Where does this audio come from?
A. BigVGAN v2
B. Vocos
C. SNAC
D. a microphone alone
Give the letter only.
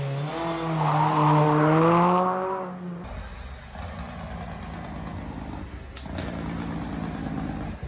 D